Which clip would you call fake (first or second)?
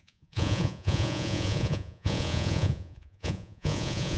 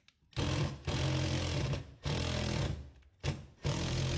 first